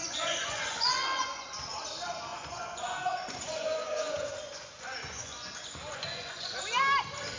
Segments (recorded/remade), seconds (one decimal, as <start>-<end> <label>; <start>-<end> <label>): 0.0-1.6 remade; 1.6-2.3 recorded; 2.3-6.6 remade; 6.6-7.4 recorded